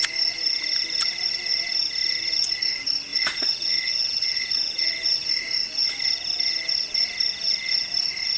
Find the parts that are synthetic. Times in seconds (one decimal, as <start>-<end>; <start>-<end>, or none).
3.1-5.3